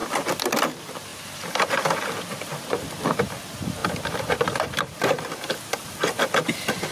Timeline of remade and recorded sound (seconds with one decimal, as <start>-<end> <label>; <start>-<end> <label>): 0.0-1.1 recorded; 1.1-1.8 remade; 1.8-2.5 recorded; 2.5-3.4 remade; 3.4-3.8 recorded; 3.8-5.5 remade; 5.5-6.9 recorded